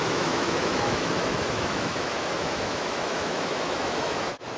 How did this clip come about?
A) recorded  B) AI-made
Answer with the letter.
B